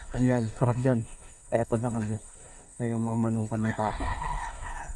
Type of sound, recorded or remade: remade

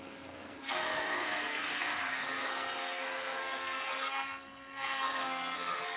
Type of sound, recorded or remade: remade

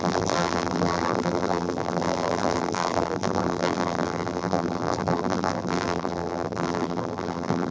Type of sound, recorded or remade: remade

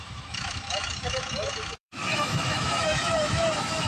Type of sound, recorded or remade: remade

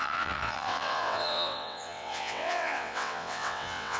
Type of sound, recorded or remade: remade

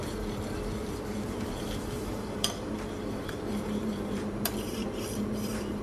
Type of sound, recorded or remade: remade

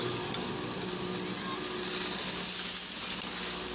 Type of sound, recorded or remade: recorded